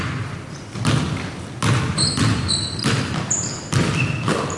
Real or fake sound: real